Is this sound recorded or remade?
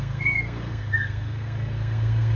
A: remade